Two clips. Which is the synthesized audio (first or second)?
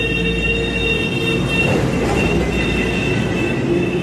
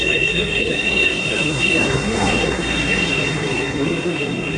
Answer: second